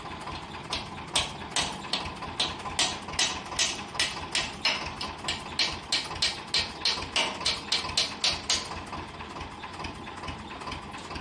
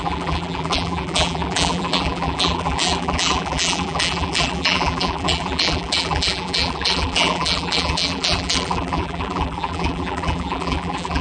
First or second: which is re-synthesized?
second